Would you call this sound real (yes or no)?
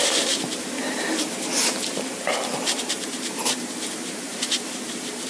no